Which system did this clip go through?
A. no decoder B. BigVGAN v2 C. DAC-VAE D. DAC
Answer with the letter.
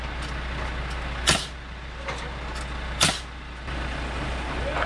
A